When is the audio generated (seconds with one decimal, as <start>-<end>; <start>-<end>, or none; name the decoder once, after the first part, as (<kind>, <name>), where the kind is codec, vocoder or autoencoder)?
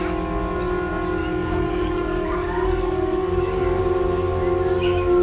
1.2-3.8 (codec, DAC)